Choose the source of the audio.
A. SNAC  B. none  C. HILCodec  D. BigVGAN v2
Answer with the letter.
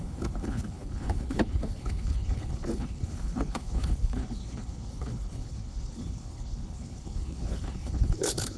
C